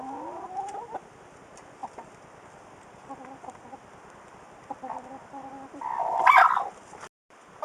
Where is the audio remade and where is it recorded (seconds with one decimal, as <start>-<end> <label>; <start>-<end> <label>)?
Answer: 0.0-7.6 recorded